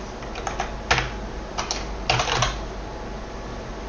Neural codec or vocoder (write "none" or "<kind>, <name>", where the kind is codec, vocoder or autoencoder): none